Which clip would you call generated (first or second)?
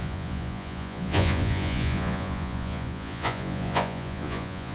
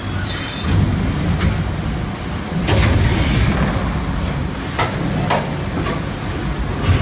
first